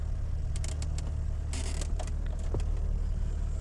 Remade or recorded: recorded